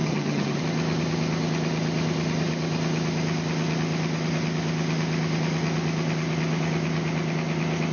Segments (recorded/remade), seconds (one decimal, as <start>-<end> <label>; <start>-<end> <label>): 0.0-0.6 remade; 0.6-7.9 recorded